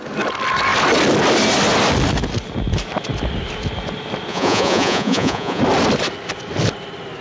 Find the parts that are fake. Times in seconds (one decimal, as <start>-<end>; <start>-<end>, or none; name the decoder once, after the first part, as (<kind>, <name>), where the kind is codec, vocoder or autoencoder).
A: 4.3-5.6 (vocoder, Vocos)